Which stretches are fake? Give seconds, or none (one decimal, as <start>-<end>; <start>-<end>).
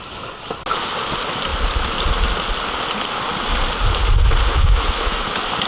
4.5-5.2